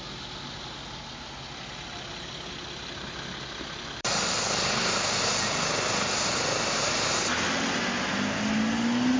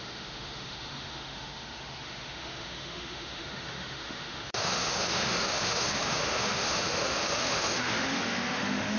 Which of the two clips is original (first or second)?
first